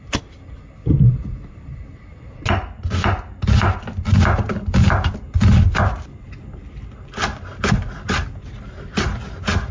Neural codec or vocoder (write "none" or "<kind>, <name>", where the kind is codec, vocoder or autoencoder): none